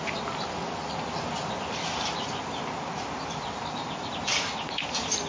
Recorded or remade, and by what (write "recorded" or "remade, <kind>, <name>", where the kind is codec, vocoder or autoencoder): recorded